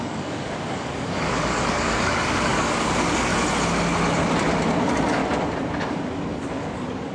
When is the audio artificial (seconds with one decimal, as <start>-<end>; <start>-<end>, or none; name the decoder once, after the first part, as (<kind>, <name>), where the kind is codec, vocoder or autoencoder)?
0.0-3.3 (codec, DAC); 4.8-5.2; 5.8-7.1